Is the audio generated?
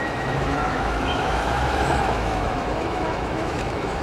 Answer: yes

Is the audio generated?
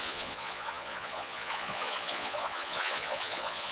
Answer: yes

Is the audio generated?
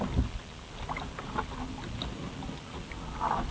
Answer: no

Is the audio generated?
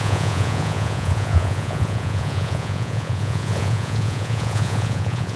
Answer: yes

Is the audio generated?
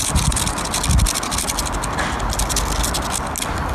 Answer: no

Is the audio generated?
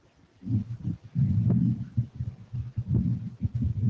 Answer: no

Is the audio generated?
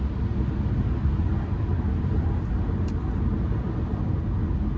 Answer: no